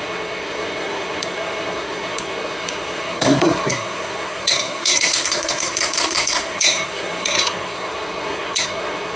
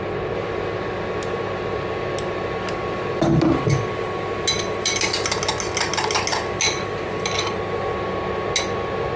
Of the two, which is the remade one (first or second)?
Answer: first